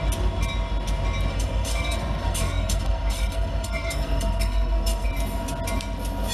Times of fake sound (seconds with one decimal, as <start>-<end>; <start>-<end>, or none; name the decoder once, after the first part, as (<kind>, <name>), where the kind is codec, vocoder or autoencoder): 1.3-5.1 (codec, SNAC)